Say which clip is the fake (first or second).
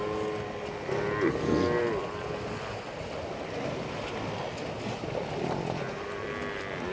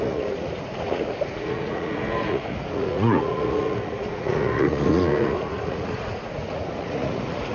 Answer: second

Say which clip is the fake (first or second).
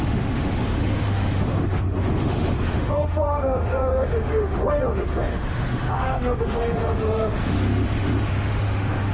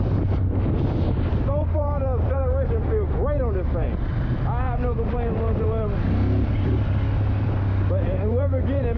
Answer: first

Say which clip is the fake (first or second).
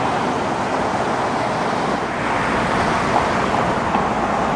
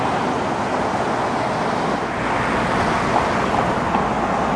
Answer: first